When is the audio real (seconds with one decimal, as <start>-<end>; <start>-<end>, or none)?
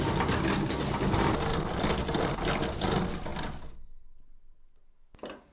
0.0-1.5; 2.3-5.5